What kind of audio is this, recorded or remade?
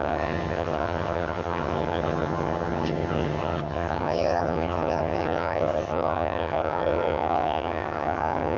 remade